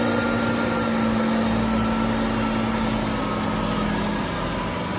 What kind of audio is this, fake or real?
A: real